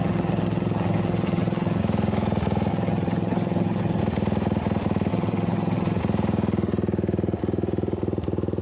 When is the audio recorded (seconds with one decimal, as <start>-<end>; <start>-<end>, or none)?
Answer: 1.8-2.7; 4.0-5.1; 6.0-8.6